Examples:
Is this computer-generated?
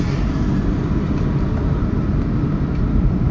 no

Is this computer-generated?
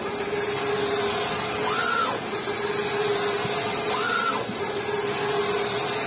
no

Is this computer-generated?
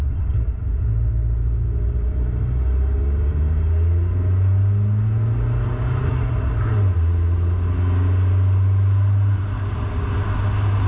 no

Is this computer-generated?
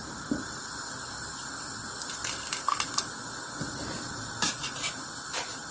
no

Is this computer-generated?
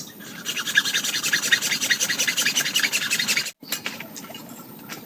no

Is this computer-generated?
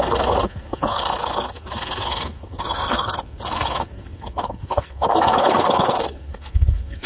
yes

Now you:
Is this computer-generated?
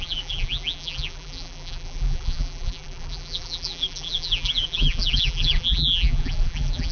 yes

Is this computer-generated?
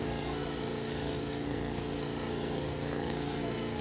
yes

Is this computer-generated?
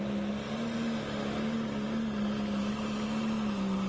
no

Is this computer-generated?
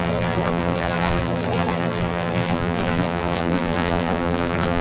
yes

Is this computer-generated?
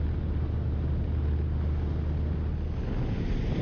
no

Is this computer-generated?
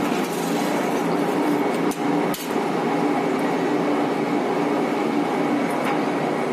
no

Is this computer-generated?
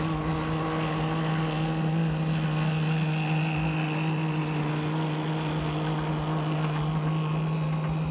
no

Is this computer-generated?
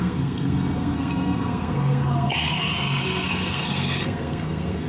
yes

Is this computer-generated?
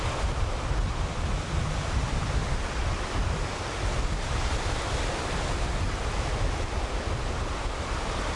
no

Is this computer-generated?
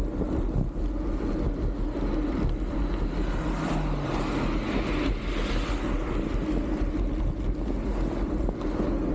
no